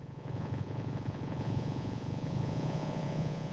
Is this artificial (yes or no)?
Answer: yes